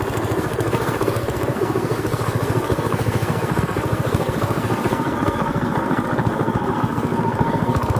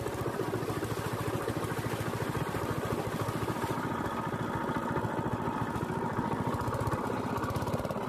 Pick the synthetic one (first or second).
first